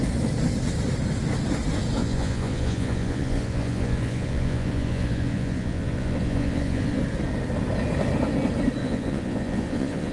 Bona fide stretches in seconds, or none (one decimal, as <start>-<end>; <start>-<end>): 0.0-2.0; 7.0-8.8